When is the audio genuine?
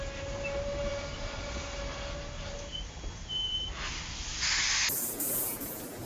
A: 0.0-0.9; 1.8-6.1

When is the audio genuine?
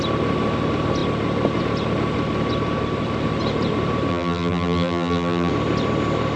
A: 0.0-4.1; 5.5-6.4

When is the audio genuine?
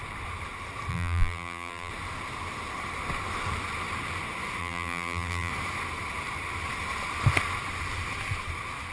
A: 0.0-0.9; 1.9-4.6; 5.5-8.9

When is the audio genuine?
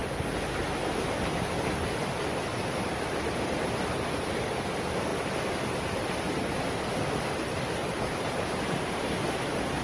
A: 0.0-7.8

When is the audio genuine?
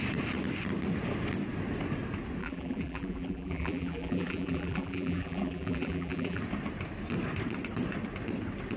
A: 0.0-2.4; 6.4-8.8